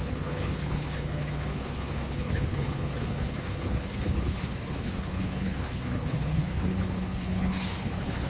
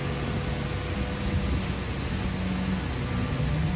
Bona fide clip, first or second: second